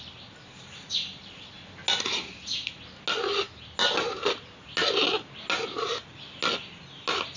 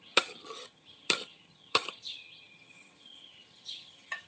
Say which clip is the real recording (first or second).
first